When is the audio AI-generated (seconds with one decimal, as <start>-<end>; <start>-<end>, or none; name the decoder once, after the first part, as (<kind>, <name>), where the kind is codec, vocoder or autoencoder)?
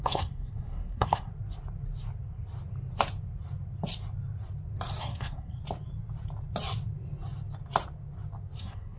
0.0-1.3 (codec, SNAC); 5.0-5.6; 8.6-9.0